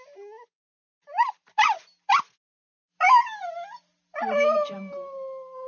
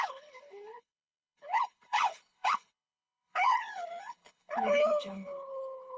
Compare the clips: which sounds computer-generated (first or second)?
second